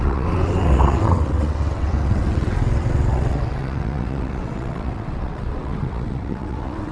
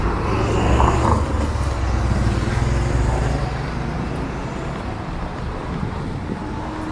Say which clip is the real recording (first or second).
second